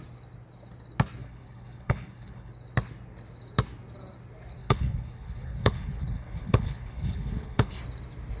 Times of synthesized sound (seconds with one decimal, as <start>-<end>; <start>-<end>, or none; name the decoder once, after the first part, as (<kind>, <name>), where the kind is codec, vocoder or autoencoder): 1.2-2.5 (codec, HILCodec); 4.6-7.7